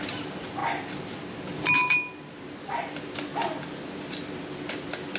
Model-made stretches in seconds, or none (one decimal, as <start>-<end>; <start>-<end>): none